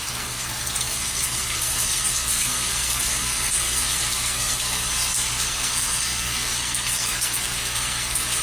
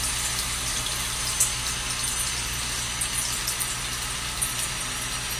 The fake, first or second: first